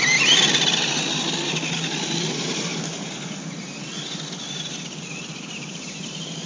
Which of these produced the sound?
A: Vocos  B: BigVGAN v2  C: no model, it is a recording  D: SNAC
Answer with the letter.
C